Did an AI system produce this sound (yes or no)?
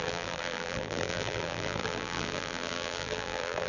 yes